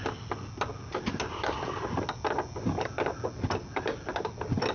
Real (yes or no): yes